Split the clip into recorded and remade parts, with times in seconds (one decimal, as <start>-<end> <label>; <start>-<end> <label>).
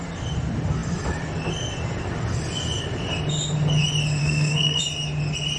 0.0-4.2 recorded; 4.2-4.8 remade; 4.8-5.6 recorded